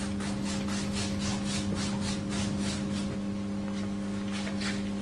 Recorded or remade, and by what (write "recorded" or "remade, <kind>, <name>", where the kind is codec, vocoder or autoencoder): recorded